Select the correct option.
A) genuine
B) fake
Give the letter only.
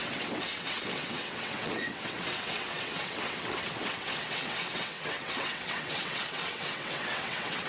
B